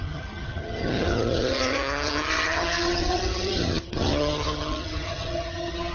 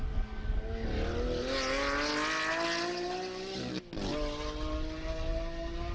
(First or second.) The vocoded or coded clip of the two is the first